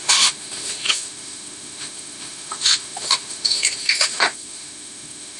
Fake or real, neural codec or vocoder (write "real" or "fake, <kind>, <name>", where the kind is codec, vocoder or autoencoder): fake, autoencoder, DAC-VAE